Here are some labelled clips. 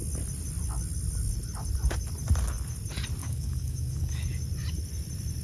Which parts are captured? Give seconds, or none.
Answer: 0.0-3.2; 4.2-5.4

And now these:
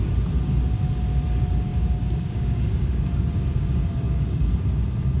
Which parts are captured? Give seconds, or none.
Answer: 0.0-1.7; 4.8-5.2

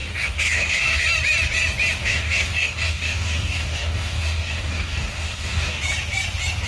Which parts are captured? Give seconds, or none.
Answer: 1.0-2.0; 5.8-6.7

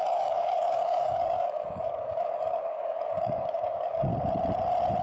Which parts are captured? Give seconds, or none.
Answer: 4.1-5.0

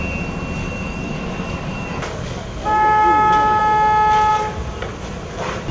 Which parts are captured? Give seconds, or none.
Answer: 0.0-0.6; 3.6-5.7

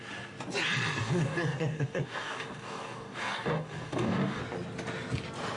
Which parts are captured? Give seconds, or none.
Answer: 0.0-1.0; 4.4-5.6

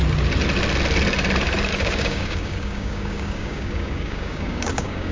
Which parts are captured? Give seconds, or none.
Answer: 0.0-1.7